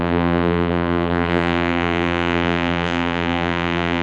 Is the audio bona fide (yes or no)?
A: no